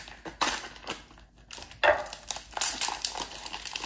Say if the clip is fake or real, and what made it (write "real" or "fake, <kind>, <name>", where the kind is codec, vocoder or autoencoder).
real